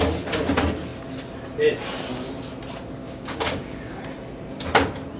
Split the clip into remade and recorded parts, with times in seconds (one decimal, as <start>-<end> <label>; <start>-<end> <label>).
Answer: 0.0-3.0 recorded; 3.0-4.0 remade; 4.0-5.2 recorded